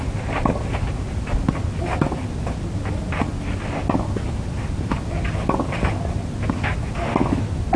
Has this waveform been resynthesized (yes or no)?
no